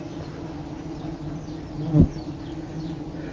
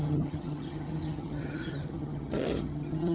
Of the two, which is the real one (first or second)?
first